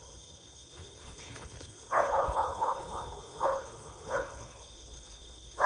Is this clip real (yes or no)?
no